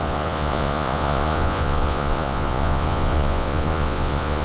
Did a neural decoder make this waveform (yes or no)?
yes